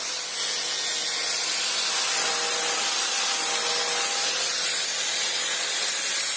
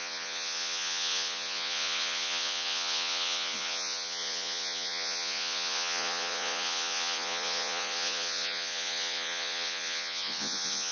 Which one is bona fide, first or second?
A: first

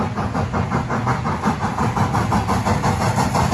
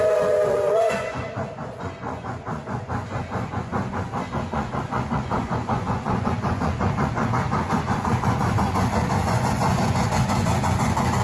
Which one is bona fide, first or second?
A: first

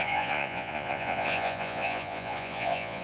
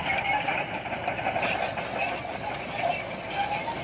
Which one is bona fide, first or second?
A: second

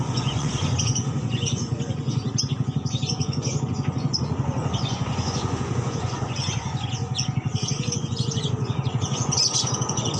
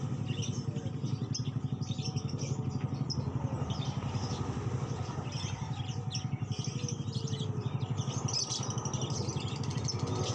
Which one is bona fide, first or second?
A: second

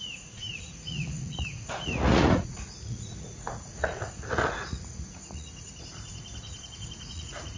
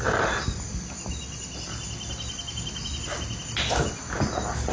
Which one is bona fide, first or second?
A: second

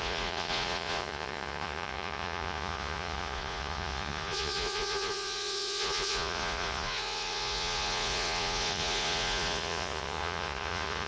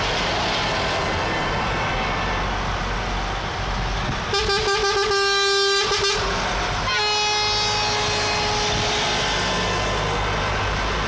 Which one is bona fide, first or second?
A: second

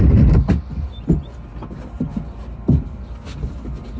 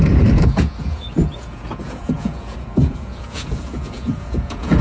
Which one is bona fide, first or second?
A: first